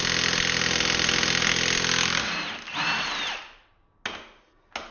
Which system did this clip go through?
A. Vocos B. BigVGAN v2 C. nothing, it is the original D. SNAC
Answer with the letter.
C